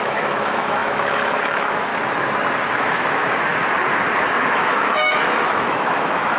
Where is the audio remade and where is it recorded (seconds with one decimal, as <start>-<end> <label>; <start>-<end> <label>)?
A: 0.0-1.9 remade; 1.9-2.8 recorded; 2.8-3.5 remade; 3.5-4.2 recorded; 4.2-6.4 remade